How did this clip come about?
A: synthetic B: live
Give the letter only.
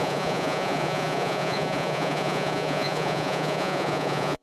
A